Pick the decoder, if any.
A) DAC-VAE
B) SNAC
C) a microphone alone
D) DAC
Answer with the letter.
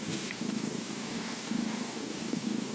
D